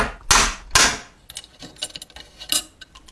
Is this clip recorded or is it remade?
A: recorded